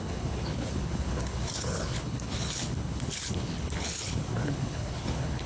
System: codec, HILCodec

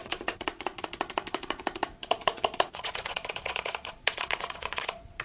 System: vocoder, Vocos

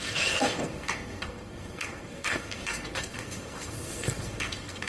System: codec, SNAC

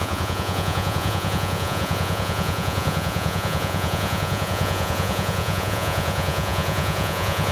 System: vocoder, Vocos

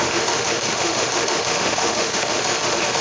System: autoencoder, DAC-VAE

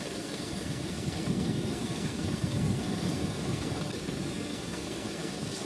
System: codec, SNAC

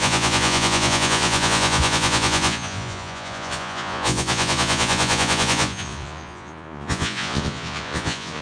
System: vocoder, Vocos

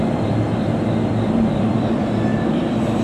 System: vocoder, BigVGAN v2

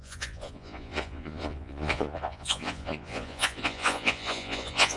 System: vocoder, Vocos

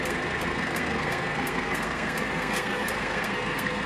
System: codec, SNAC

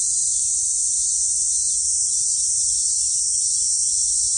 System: none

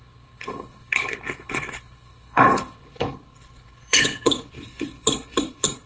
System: codec, HILCodec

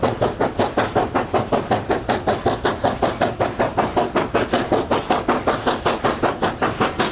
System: vocoder, BigVGAN v2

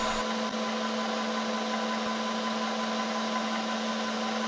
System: none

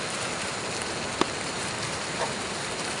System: none